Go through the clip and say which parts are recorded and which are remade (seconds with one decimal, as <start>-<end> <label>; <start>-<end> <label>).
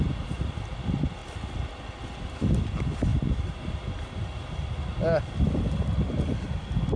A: 0.0-3.1 recorded; 3.1-3.6 remade; 3.6-7.0 recorded